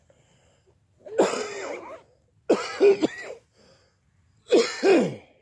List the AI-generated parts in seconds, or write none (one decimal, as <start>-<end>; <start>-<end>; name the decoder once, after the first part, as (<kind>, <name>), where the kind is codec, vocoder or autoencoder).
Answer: none